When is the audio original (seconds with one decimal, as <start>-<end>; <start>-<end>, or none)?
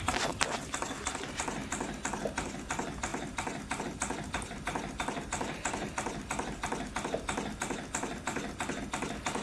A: 0.0-9.4